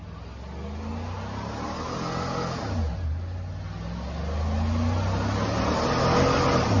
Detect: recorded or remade recorded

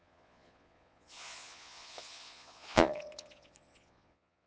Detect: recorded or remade remade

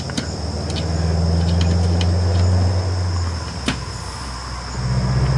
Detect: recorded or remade recorded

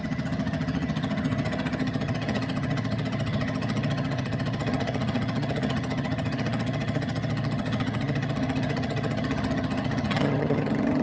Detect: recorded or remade remade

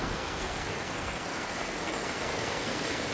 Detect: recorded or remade remade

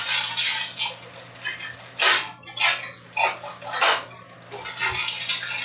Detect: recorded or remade recorded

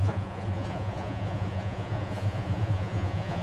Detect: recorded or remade remade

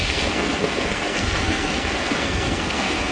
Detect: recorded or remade remade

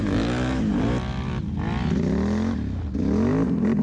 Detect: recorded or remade recorded